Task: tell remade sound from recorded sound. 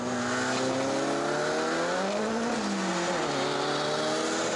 recorded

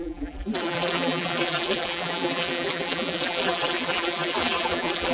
remade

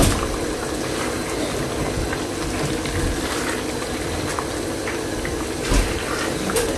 recorded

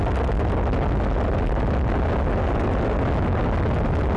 recorded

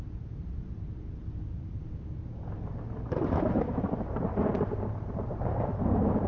remade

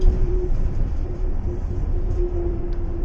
remade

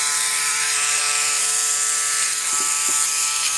remade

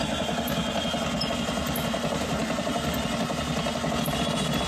recorded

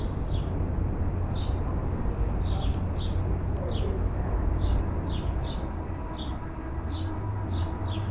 recorded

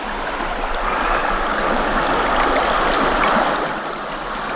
recorded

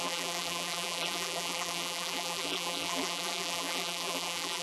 remade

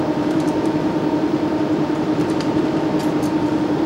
remade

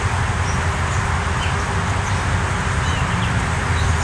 recorded